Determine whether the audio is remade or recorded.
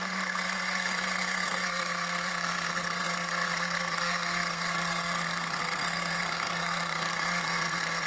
remade